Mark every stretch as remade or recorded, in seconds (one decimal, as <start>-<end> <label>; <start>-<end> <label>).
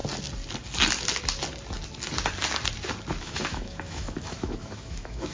0.0-3.2 recorded; 3.2-5.3 remade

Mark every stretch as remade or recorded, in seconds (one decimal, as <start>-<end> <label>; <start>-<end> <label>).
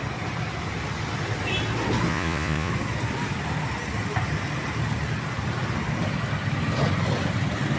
0.0-2.1 recorded; 2.1-2.7 remade; 2.7-7.8 recorded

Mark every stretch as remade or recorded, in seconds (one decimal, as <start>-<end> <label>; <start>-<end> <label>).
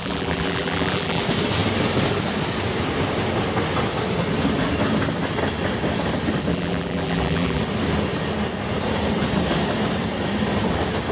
0.0-1.2 remade; 1.2-6.5 recorded; 6.5-7.6 remade; 7.6-11.1 recorded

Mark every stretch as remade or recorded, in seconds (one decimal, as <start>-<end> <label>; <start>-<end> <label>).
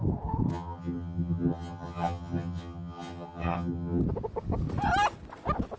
0.0-0.5 recorded; 0.5-4.0 remade; 4.0-5.8 recorded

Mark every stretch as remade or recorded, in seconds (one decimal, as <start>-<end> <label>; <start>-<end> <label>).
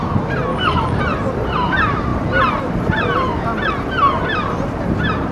0.0-0.5 recorded; 0.5-1.0 remade; 1.0-5.3 recorded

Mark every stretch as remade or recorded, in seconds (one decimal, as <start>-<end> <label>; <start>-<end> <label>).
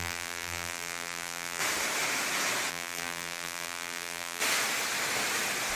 0.0-1.6 remade; 1.6-2.7 recorded; 2.7-4.4 remade; 4.4-5.8 recorded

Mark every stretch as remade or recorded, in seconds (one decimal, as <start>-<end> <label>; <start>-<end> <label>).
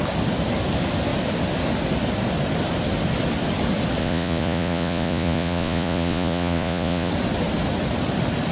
0.0-4.0 recorded; 4.0-7.1 remade; 7.1-8.5 recorded